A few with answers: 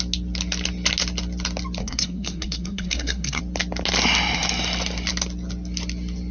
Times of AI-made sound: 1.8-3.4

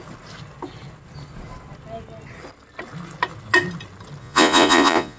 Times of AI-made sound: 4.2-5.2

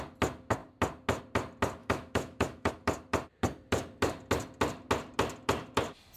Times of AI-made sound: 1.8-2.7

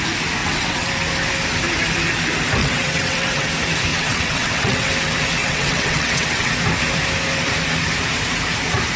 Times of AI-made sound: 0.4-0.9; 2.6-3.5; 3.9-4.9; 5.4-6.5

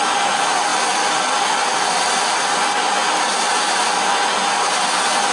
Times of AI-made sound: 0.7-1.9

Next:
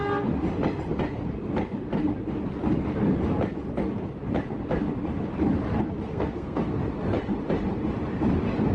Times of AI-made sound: 6.1-6.8

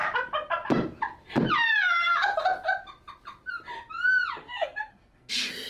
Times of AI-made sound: 4.4-5.3

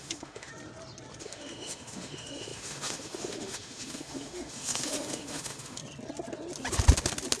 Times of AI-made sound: 0.0-0.5; 1.2-5.8